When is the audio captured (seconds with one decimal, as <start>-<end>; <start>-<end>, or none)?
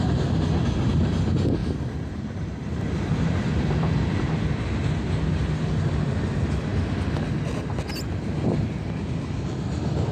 0.0-1.6; 4.3-10.1